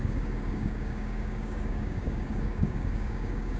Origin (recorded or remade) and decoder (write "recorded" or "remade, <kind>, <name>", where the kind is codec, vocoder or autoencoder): remade, codec, DAC